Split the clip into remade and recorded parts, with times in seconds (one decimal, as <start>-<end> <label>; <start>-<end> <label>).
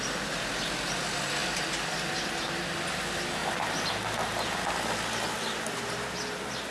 0.0-6.7 recorded